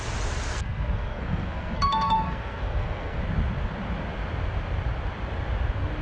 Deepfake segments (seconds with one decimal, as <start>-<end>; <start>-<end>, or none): 0.5-3.2